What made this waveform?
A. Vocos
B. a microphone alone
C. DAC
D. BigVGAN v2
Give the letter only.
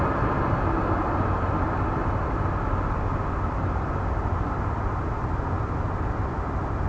B